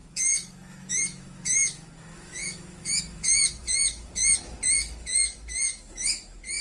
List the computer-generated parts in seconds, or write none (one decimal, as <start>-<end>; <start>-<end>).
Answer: 0.0-6.6